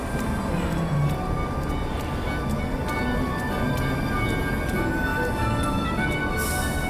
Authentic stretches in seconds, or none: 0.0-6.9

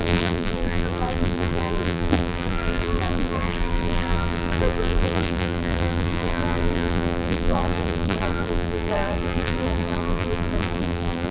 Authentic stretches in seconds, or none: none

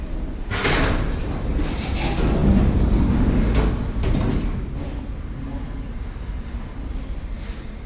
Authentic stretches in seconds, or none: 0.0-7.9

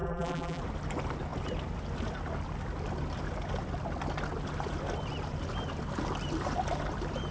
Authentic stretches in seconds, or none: 0.6-7.3